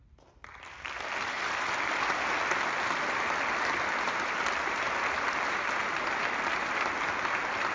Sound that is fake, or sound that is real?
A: real